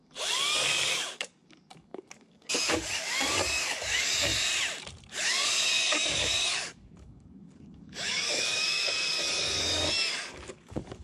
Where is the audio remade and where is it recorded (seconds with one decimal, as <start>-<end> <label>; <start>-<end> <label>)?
0.0-4.3 remade; 4.3-5.1 recorded; 5.1-11.0 remade